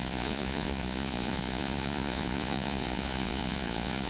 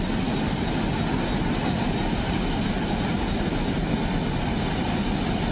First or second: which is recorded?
second